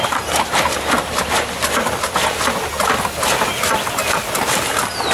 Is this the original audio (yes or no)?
yes